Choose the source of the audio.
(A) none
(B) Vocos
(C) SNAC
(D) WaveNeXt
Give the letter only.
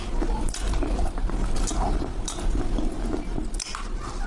A